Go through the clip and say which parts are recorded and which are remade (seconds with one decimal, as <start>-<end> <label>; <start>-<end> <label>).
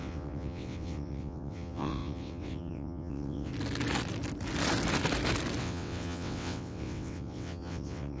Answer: 0.0-3.5 remade; 3.5-5.6 recorded; 5.6-8.2 remade